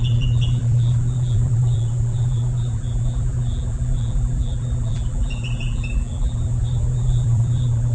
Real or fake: fake